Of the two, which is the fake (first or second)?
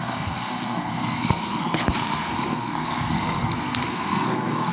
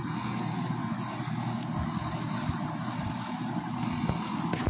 first